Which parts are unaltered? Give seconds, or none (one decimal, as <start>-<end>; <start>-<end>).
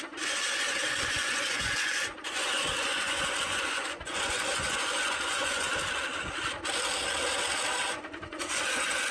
5.7-7.8